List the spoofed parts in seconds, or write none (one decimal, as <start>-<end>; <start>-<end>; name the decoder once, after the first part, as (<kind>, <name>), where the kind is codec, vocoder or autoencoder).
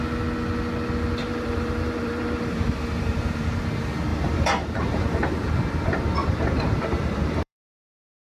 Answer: 1.2-3.6 (vocoder, BigVGAN v2); 4.1-5.0; 6.2-8.2